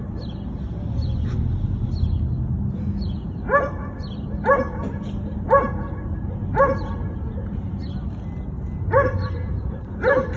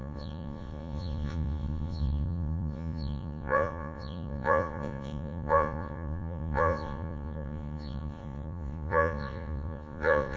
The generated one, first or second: second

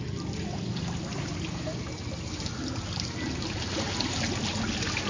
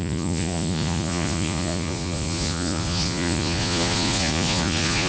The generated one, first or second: second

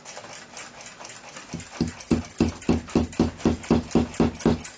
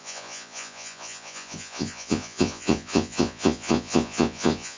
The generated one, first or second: second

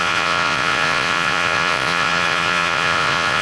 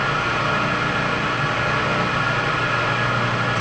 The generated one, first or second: first